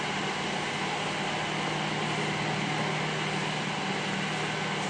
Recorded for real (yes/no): yes